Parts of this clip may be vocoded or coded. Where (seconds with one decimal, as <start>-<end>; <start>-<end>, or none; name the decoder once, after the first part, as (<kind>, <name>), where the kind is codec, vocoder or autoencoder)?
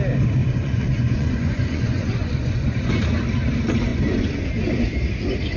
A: 0.4-2.9 (vocoder, Vocos); 3.9-4.5